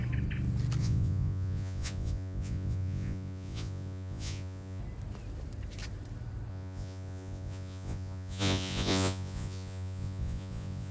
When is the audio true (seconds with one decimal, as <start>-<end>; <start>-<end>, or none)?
0.0-0.8; 4.8-6.5